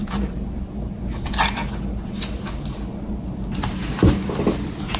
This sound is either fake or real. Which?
real